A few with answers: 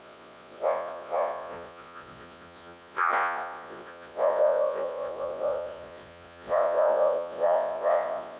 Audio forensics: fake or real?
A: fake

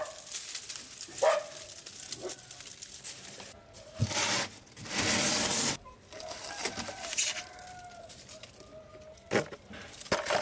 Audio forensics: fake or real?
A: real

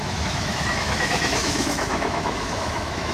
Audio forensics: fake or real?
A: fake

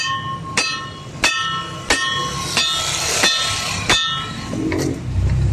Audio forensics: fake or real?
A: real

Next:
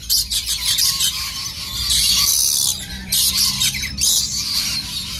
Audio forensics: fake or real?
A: fake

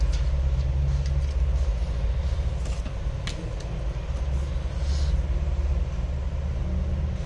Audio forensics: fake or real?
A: real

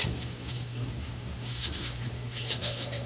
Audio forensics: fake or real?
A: fake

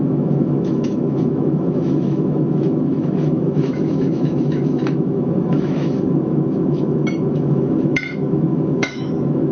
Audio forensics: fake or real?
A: fake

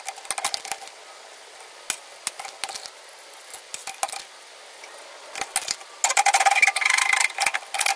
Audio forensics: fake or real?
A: real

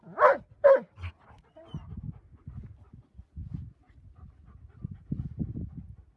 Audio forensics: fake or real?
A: real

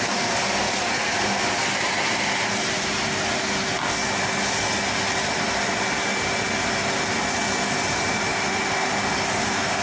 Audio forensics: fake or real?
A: real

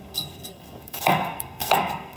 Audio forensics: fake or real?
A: fake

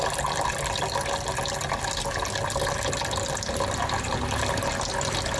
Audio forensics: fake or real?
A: real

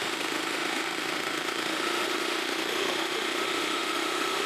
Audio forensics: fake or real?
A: fake